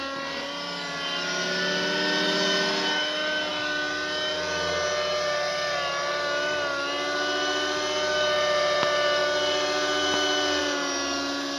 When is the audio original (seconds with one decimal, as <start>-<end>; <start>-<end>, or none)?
0.0-11.6